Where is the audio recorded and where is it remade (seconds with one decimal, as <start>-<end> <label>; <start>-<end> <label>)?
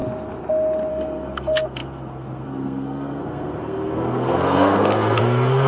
0.0-0.9 recorded; 0.9-5.7 remade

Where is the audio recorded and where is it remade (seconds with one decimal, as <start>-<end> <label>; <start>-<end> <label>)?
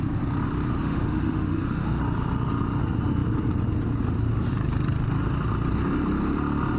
0.0-0.7 recorded; 0.7-2.0 remade; 2.0-6.8 recorded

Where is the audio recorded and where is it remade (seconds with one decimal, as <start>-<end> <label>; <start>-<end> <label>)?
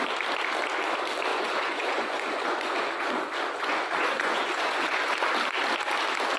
0.0-1.3 recorded; 1.3-5.1 remade; 5.1-6.4 recorded